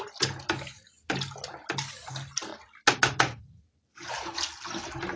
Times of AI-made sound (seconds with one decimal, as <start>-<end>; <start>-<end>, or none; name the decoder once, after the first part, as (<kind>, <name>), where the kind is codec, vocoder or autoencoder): none